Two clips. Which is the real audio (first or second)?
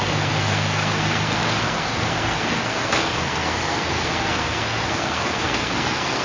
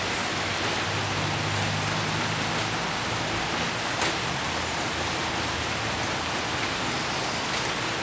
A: second